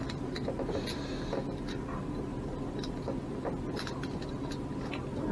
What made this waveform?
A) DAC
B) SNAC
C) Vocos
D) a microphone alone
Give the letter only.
D